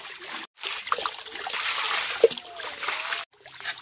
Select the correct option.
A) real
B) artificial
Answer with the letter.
A